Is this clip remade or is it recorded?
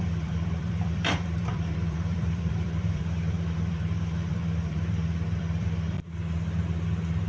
remade